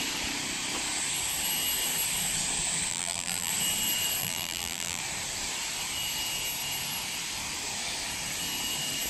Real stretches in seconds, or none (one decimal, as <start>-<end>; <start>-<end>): 0.0-2.9; 3.5-4.2; 5.0-9.1